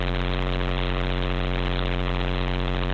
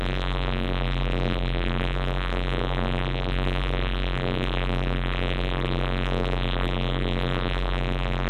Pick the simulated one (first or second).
second